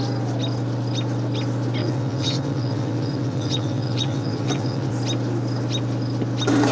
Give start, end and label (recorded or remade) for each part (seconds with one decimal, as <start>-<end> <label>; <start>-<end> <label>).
0.0-1.8 recorded; 1.8-4.9 remade; 4.9-6.7 recorded